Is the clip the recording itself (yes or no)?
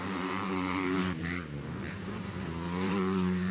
no